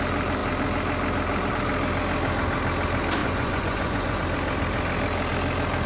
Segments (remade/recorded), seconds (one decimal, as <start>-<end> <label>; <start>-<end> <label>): 0.0-3.2 recorded; 3.2-4.2 remade; 4.2-5.9 recorded